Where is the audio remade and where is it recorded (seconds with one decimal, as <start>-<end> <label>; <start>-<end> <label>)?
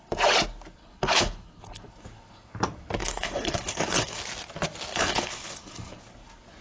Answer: 0.0-0.8 recorded; 0.8-1.9 remade; 1.9-3.0 recorded; 3.0-4.2 remade; 4.2-4.9 recorded; 4.9-6.0 remade; 6.0-6.6 recorded